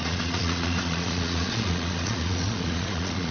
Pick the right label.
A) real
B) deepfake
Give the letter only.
B